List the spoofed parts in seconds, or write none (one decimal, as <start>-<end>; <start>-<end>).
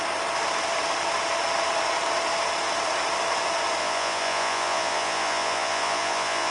3.8-6.5